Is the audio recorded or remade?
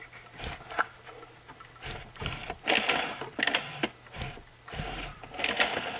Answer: recorded